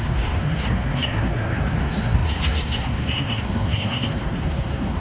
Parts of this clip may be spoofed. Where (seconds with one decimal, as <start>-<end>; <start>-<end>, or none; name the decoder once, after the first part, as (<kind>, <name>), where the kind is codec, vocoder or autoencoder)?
0.0-5.0 (codec, SNAC)